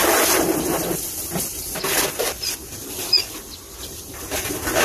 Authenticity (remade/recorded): recorded